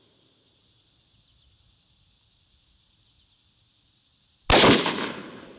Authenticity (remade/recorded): recorded